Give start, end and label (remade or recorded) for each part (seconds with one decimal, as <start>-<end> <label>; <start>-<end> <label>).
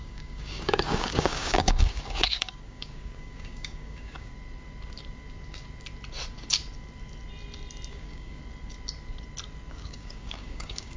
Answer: 0.0-4.3 remade; 4.3-7.9 recorded; 7.9-8.4 remade; 8.4-9.7 recorded; 9.7-11.0 remade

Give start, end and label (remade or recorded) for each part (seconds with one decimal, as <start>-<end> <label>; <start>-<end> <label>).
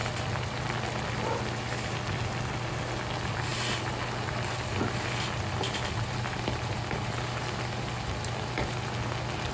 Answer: 0.0-9.5 recorded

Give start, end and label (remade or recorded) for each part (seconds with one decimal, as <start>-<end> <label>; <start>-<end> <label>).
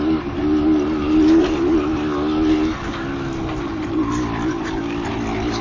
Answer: 0.0-3.7 recorded; 3.7-5.1 remade; 5.1-5.6 recorded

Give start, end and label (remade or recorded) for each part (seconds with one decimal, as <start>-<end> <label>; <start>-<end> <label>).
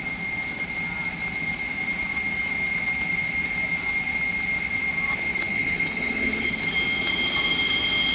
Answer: 0.0-5.5 recorded; 5.5-6.6 remade; 6.6-8.1 recorded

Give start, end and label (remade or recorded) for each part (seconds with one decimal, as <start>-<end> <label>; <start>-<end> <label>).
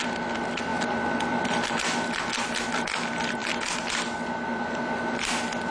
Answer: 0.0-5.7 recorded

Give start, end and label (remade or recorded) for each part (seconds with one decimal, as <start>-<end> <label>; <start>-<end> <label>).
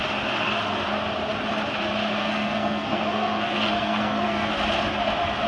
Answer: 0.0-2.2 recorded; 2.2-4.5 remade; 4.5-5.5 recorded